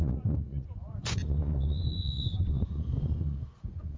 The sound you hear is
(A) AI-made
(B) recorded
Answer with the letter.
A